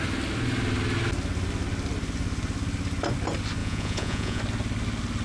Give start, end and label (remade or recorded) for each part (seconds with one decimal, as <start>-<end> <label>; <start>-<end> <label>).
0.0-3.6 recorded; 3.6-4.4 remade; 4.4-5.2 recorded